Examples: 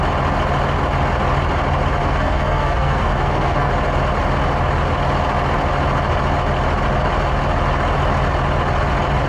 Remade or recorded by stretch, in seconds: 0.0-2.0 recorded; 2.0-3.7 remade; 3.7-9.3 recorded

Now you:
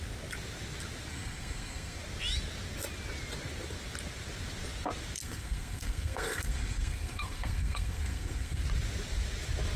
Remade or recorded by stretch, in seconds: 0.0-1.1 recorded; 1.1-2.0 remade; 2.0-5.2 recorded; 5.2-8.6 remade; 8.6-9.8 recorded

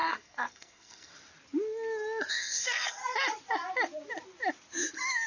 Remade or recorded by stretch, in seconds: 0.0-1.1 remade; 1.1-2.3 recorded; 2.3-3.0 remade; 3.0-5.3 recorded

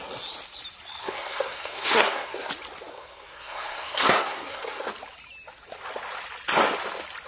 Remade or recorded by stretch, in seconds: 0.0-1.0 recorded; 1.0-2.5 remade; 2.5-2.9 recorded; 2.9-4.9 remade; 4.9-7.3 recorded